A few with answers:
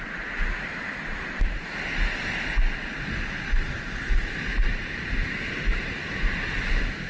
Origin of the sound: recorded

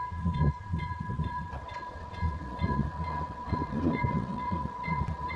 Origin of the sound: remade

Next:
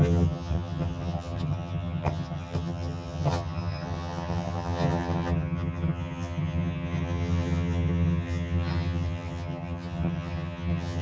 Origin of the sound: remade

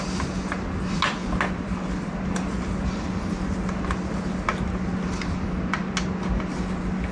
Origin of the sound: recorded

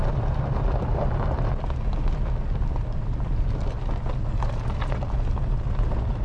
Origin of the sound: recorded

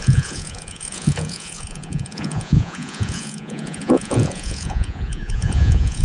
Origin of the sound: remade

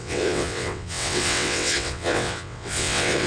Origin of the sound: remade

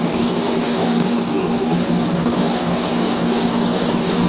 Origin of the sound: remade